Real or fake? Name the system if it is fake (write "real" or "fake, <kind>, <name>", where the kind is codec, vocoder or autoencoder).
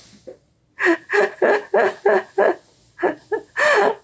real